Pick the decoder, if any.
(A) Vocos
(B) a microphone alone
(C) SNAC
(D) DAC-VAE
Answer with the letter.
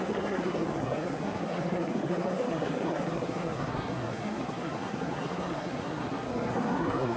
C